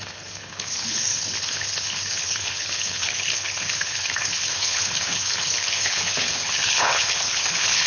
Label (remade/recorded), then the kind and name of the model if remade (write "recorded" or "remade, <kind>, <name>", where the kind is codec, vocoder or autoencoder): remade, codec, HILCodec